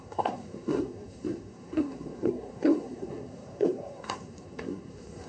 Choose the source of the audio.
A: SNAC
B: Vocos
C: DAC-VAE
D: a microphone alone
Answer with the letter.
A